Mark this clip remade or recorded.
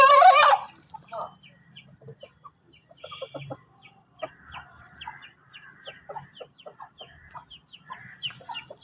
remade